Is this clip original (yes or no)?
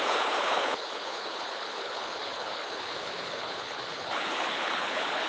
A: no